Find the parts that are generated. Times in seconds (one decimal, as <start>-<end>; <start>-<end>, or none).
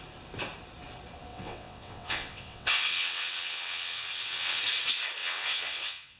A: 1.3-4.6; 5.2-6.2